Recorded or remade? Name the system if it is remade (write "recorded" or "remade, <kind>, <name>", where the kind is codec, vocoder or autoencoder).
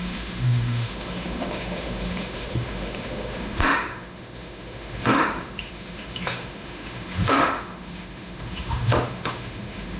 remade, autoencoder, DAC-VAE